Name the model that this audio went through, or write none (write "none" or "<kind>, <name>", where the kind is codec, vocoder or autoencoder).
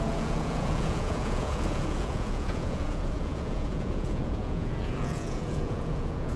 vocoder, Vocos